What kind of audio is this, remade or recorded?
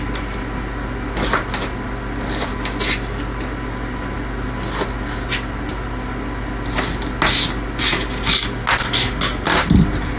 recorded